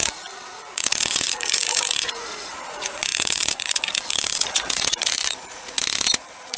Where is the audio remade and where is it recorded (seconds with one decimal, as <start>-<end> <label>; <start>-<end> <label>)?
0.0-6.6 remade